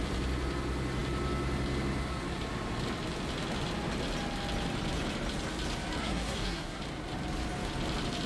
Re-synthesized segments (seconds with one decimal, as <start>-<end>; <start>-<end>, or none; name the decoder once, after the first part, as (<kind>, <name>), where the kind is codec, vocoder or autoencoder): 6.0-6.8 (codec, SNAC)